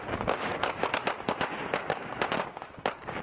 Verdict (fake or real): fake